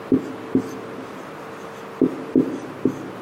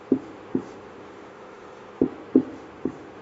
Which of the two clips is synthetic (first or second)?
second